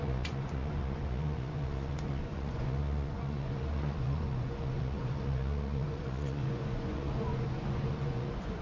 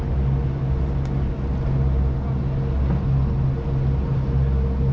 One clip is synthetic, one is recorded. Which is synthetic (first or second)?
first